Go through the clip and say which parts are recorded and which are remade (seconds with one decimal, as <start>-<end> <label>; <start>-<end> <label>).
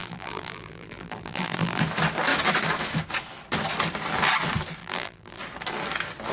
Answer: 0.0-1.8 remade; 1.8-4.8 recorded; 4.8-5.4 remade; 5.4-6.3 recorded